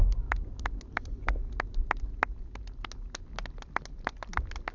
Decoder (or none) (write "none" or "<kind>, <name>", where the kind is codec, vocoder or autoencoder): none